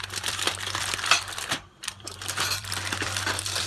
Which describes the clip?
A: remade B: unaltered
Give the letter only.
A